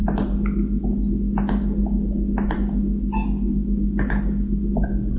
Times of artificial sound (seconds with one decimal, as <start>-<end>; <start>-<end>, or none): none